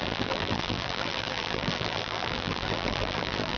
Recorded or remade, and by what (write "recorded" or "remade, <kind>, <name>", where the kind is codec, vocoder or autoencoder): remade, vocoder, BigVGAN v2